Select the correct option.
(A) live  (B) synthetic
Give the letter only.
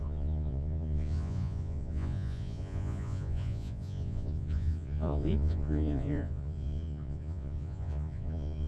B